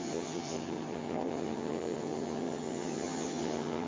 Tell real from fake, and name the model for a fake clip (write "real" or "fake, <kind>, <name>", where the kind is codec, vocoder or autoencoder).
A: fake, vocoder, HiFi-GAN